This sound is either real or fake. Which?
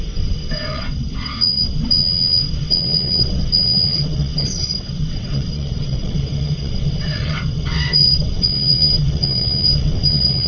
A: fake